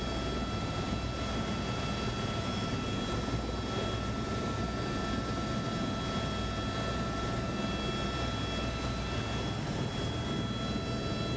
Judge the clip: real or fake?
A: real